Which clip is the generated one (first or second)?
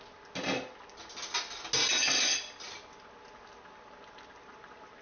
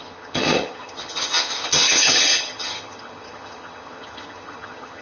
second